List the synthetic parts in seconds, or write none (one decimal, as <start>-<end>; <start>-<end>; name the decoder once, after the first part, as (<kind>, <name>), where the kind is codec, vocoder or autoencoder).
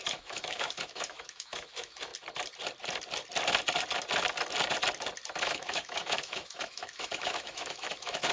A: 0.0-2.1 (autoencoder, DAC-VAE); 5.4-8.3